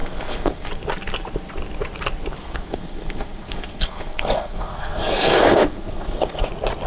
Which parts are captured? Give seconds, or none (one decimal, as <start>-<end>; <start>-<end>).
0.7-2.4; 6.5-6.9